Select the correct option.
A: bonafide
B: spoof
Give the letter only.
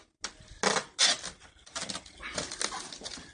A